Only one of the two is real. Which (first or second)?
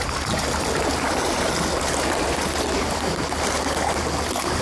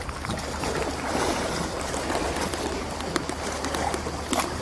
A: first